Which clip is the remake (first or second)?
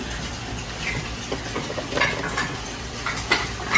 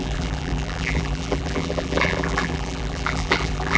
second